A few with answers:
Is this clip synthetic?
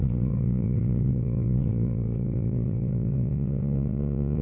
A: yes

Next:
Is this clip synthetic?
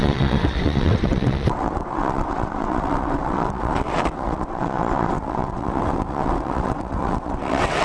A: yes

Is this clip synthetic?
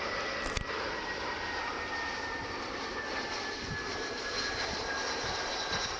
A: no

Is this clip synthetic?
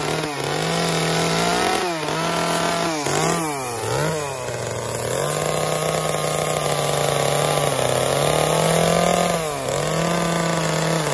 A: no